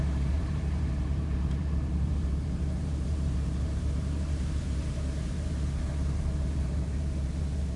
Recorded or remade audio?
remade